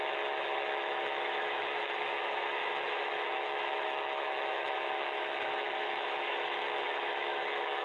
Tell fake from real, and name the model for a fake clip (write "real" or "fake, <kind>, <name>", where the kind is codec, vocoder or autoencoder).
fake, autoencoder, DAC-VAE